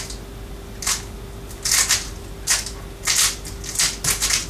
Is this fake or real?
real